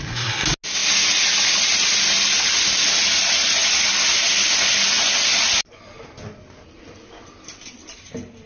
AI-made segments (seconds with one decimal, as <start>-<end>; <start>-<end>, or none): none